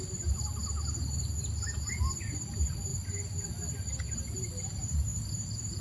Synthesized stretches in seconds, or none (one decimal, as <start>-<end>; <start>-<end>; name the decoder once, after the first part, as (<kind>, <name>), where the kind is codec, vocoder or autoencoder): none